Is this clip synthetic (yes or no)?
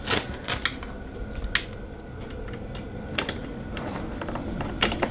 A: no